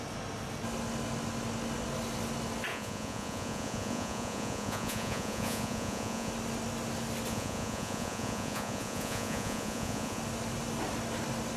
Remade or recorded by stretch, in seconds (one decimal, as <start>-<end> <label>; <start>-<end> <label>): 0.0-2.7 recorded; 2.7-6.3 remade; 6.3-7.3 recorded; 7.3-10.2 remade; 10.2-11.6 recorded